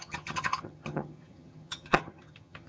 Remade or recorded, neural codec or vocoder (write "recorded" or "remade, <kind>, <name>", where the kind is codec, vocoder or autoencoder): remade, vocoder, HiFi-GAN